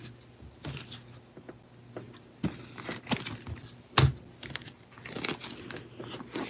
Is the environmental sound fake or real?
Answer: real